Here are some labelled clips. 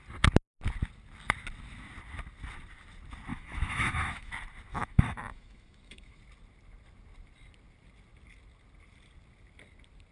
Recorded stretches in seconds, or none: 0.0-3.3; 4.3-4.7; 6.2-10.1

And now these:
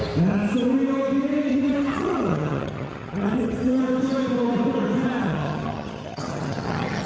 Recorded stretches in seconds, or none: 0.0-1.5; 3.8-5.2

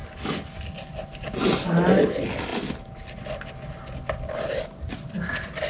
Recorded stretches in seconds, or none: 0.0-5.7

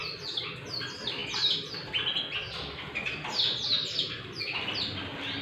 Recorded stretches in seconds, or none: 0.0-5.4